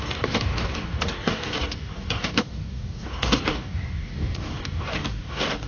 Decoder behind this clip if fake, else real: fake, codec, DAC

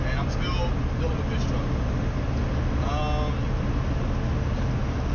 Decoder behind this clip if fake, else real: real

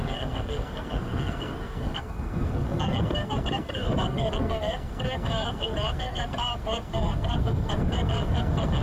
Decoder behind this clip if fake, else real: fake, codec, SNAC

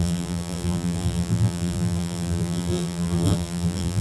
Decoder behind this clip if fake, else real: fake, vocoder, BigVGAN v2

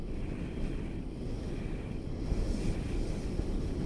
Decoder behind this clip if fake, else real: real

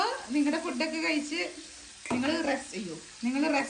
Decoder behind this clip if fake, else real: real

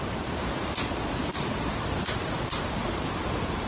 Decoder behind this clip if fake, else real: real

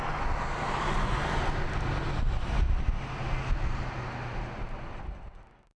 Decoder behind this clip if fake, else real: real